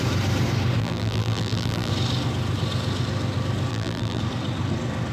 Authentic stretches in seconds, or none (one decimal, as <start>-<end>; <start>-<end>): 0.0-0.8; 1.9-3.7; 4.2-5.1